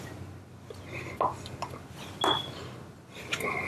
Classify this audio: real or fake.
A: real